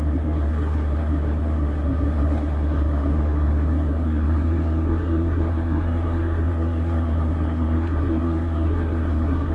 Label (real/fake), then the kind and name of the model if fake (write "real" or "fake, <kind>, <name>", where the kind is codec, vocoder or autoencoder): fake, codec, SNAC